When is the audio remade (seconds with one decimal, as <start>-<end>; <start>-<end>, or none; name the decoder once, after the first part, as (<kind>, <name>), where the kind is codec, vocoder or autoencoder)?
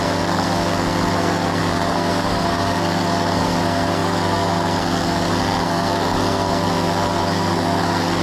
0.0-8.2 (codec, SNAC)